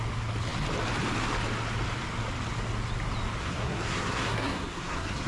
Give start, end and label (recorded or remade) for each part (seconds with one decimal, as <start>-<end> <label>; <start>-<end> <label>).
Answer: 0.0-3.4 recorded; 3.4-5.3 remade